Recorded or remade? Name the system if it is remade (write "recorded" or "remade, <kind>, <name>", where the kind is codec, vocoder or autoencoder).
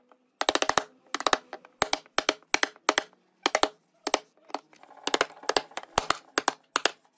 recorded